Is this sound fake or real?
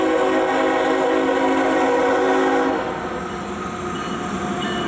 real